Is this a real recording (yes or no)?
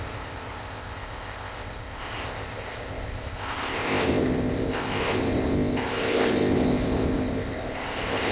no